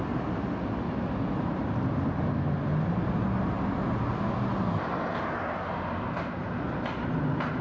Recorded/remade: recorded